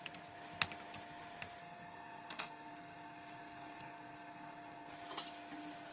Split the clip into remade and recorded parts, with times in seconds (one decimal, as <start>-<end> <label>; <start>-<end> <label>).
0.0-1.6 recorded; 1.6-4.9 remade; 4.9-5.9 recorded